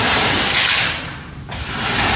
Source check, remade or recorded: recorded